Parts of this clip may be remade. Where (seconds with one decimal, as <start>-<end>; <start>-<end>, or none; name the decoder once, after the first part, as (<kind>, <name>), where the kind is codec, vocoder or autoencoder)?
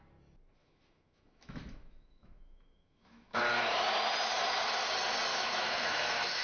0.6-3.4 (autoencoder, DAC-VAE); 5.3-6.4